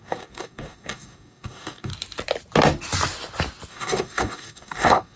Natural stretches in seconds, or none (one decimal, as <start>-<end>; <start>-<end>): 1.9-3.7